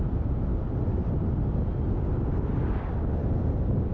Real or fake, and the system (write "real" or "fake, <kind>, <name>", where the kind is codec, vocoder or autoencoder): real